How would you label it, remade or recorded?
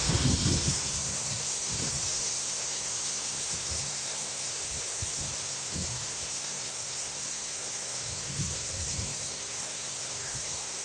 remade